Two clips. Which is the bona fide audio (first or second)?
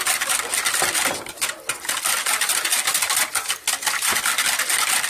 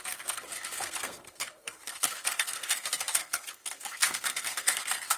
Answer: first